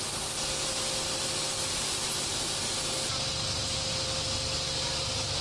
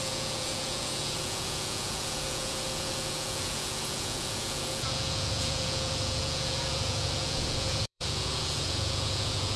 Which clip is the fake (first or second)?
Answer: second